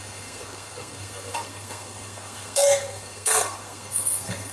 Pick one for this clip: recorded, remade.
remade